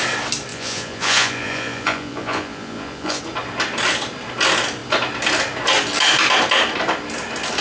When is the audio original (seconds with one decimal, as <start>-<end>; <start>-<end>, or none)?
0.0-0.5; 3.2-7.6